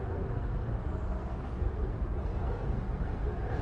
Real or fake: fake